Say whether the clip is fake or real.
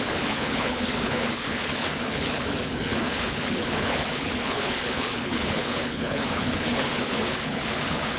fake